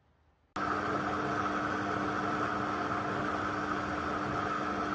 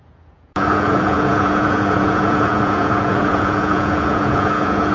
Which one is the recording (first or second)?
first